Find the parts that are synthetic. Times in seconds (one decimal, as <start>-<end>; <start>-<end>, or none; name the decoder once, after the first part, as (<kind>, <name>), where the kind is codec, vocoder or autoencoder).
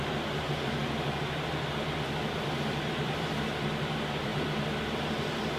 0.0-0.8 (vocoder, BigVGAN v2); 1.5-5.6